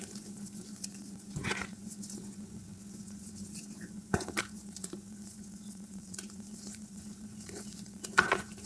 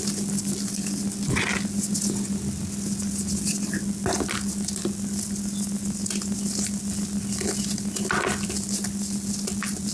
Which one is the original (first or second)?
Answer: second